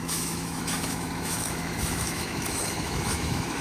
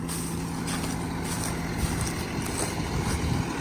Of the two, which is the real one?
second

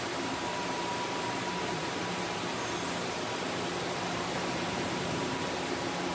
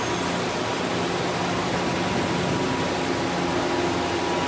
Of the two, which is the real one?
second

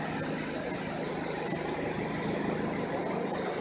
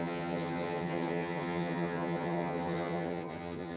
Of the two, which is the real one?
first